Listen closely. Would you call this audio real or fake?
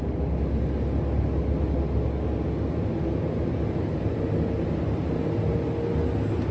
real